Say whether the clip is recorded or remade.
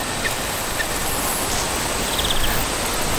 recorded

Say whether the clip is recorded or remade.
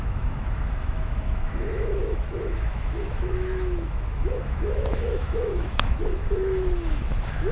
remade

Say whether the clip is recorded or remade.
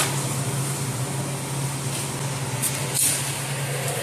recorded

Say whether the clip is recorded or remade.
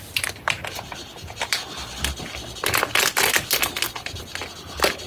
recorded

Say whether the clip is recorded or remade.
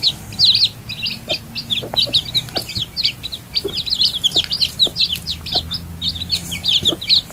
recorded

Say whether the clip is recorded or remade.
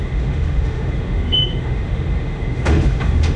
remade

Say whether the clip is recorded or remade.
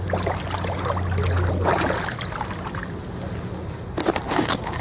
recorded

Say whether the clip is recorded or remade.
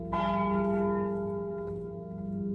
remade